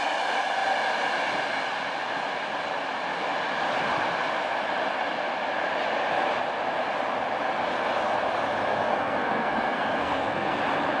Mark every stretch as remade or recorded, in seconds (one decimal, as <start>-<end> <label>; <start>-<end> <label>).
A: 0.0-8.7 recorded; 8.7-10.6 remade; 10.6-11.0 recorded